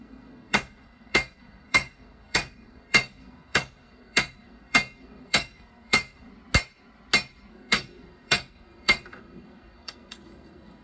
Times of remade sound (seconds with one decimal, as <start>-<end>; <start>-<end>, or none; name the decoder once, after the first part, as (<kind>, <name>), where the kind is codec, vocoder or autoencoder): 0.0-6.3 (codec, SNAC); 7.5-10.8